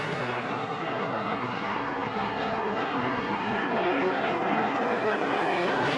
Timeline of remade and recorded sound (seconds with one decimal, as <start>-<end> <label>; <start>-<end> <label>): 0.0-6.0 remade